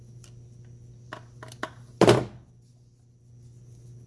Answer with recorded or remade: recorded